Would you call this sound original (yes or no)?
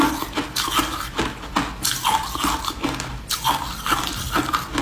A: yes